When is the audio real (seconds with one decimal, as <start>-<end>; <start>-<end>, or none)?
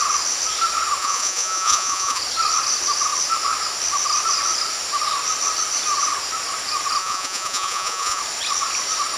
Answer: 0.0-1.0; 2.2-7.0; 8.2-9.2